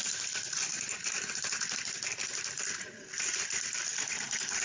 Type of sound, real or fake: real